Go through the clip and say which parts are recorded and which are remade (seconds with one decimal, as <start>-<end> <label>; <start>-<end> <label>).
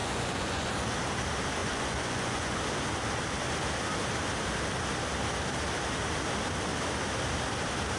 0.0-0.7 remade; 0.7-1.6 recorded; 1.6-2.6 remade; 2.6-8.0 recorded